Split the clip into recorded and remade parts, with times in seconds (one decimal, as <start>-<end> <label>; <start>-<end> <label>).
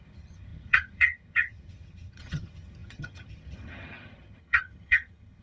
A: 0.0-5.4 remade